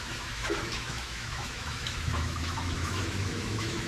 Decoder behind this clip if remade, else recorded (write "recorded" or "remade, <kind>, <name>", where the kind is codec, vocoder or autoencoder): remade, autoencoder, DAC-VAE